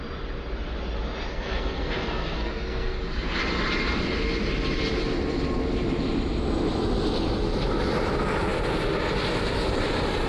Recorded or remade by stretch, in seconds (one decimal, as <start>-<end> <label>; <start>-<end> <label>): 0.0-1.3 recorded; 1.3-3.0 remade; 3.0-10.3 recorded